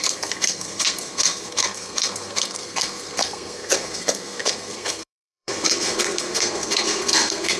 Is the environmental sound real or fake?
fake